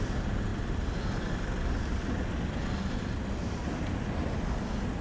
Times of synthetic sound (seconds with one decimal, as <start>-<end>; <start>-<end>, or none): none